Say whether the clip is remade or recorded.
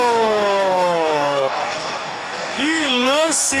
remade